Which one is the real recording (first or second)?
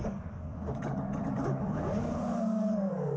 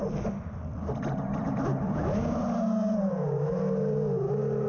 second